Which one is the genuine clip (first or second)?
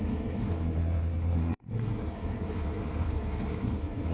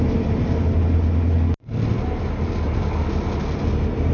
second